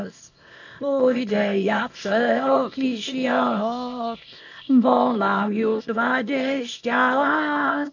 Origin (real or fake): fake